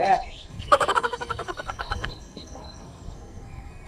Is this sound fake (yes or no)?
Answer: yes